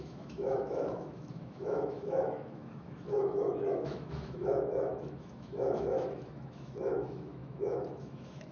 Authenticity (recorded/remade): remade